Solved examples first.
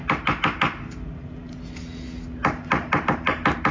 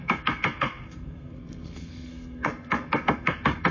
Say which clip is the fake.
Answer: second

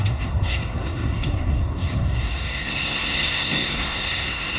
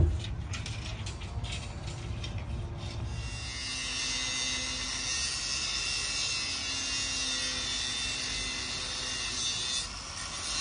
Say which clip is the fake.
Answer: first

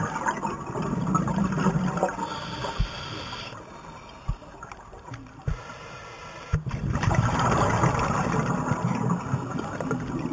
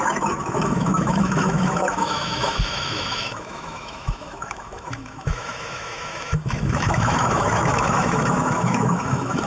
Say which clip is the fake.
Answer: second